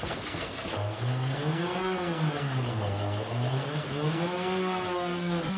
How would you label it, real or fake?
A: fake